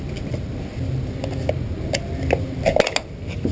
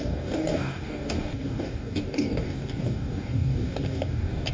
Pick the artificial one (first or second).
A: second